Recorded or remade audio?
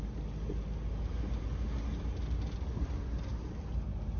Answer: recorded